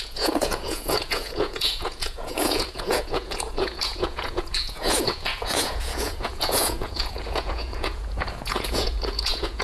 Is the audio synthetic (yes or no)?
yes